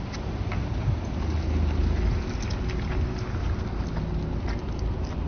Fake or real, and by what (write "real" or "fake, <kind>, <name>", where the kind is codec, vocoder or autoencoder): real